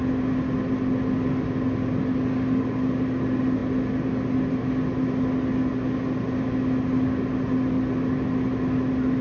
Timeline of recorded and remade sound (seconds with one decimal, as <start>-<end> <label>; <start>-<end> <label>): 0.0-9.2 recorded